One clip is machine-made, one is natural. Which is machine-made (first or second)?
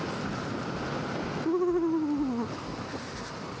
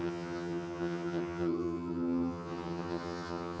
second